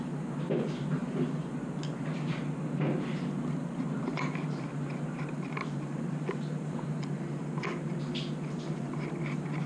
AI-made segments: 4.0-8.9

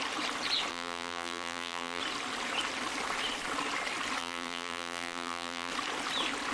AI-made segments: 0.7-2.0; 4.2-5.7

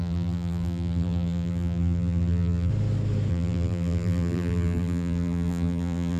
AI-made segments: 0.0-2.7; 3.3-6.2

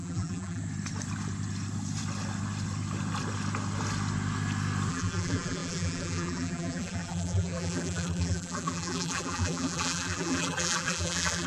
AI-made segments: 0.0-0.6; 4.9-11.5

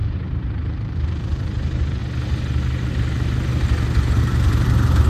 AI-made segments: 0.0-2.0; 4.2-5.1